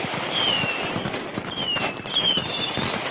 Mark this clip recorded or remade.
recorded